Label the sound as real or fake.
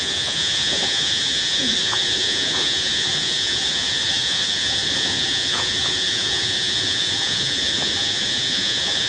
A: fake